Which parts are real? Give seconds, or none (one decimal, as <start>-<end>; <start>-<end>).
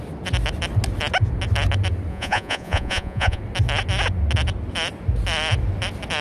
0.0-2.1; 3.4-6.2